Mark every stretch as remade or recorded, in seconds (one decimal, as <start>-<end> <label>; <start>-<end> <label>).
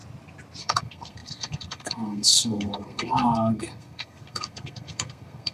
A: 0.0-0.6 recorded; 0.6-5.5 remade